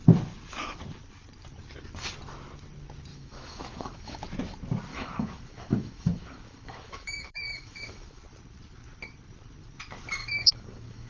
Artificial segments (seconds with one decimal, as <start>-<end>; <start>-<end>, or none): 3.1-4.2; 4.9-8.2; 10.2-11.1